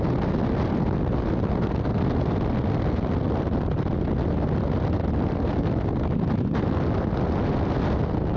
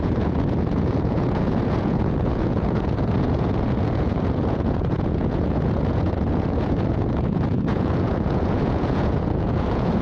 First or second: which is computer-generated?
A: second